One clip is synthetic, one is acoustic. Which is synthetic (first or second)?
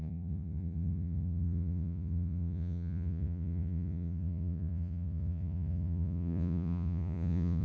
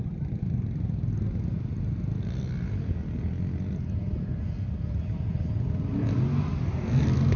first